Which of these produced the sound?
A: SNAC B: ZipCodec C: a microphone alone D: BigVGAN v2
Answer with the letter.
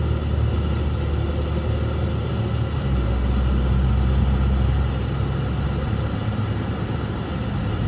C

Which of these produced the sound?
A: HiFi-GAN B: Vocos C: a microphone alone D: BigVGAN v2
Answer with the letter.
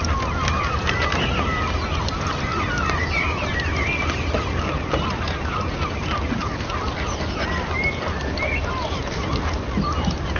C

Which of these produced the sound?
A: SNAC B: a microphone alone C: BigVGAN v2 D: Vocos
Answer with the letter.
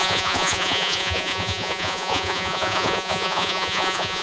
D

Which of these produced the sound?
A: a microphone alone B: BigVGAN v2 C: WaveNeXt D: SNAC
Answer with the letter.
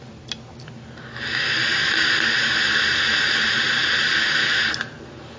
A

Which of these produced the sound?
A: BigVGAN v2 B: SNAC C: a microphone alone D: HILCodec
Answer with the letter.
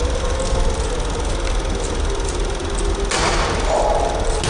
C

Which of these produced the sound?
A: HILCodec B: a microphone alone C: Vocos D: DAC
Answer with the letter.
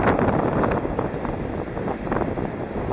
B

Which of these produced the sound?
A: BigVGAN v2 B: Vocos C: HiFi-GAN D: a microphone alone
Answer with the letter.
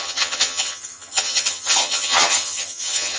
C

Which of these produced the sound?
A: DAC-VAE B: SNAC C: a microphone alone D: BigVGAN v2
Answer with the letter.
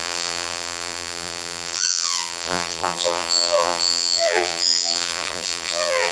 D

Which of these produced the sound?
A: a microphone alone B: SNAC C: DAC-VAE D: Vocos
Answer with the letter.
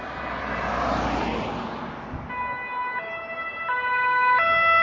A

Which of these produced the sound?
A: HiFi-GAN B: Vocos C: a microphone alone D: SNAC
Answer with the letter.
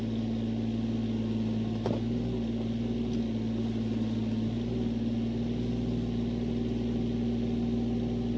C